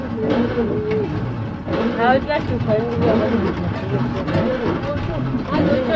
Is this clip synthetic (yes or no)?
no